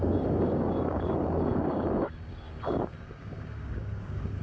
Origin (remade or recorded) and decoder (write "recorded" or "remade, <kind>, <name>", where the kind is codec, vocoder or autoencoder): remade, codec, DAC